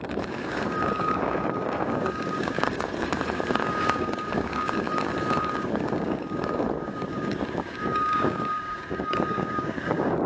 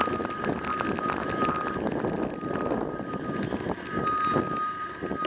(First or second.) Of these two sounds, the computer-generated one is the first